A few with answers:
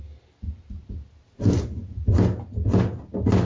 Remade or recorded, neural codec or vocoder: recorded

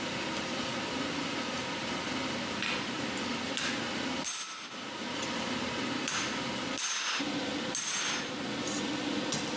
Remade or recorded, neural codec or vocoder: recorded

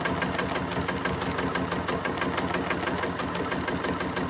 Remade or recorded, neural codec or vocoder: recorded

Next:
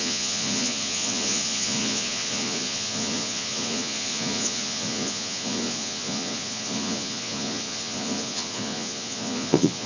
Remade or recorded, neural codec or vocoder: remade, vocoder, Vocos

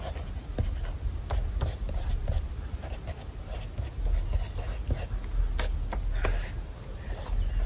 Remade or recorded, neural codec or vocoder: recorded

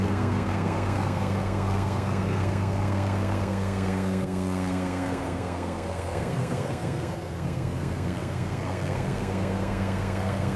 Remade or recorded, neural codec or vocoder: remade, codec, SNAC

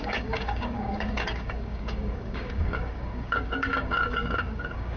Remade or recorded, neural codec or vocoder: remade, codec, DAC